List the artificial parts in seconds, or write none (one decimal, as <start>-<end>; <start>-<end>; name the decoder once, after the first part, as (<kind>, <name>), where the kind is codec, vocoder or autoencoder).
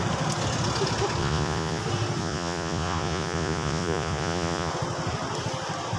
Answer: 1.2-1.8 (vocoder, Vocos); 2.2-4.7